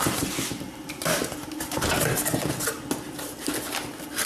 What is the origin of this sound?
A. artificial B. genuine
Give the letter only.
B